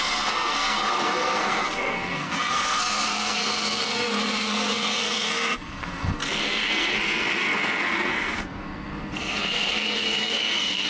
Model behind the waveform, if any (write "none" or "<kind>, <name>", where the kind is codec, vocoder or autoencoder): codec, SNAC